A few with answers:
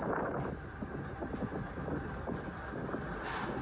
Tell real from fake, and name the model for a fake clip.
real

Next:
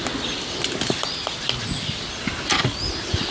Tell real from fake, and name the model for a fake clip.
real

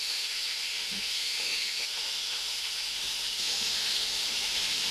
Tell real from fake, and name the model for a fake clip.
fake, autoencoder, DAC-VAE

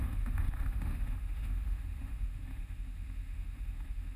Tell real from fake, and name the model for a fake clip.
fake, autoencoder, DAC-VAE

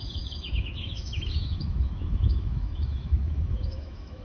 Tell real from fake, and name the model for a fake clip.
fake, autoencoder, DAC-VAE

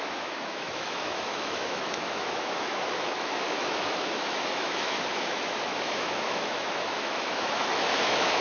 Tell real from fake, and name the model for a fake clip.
fake, autoencoder, DAC-VAE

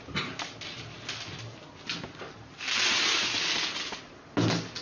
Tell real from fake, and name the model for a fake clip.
real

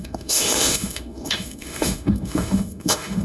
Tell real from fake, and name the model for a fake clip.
fake, autoencoder, DAC-VAE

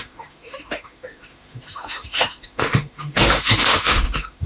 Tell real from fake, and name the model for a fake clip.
fake, autoencoder, DAC-VAE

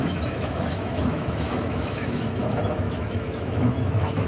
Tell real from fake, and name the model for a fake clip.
fake, autoencoder, DAC-VAE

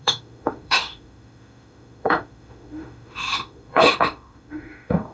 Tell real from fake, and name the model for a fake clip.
fake, autoencoder, DAC-VAE